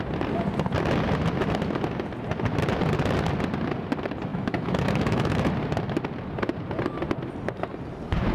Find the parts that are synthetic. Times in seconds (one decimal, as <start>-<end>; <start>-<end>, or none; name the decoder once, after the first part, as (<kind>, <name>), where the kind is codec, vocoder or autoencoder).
4.3-5.5 (autoencoder, DAC-VAE)